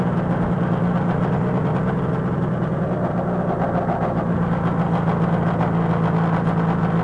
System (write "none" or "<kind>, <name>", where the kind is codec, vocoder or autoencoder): none